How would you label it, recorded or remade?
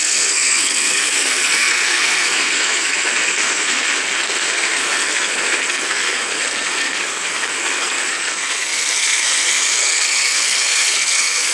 remade